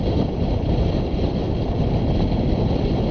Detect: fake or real real